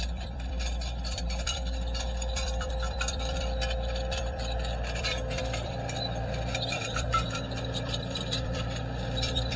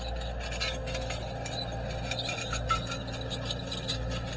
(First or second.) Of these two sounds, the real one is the second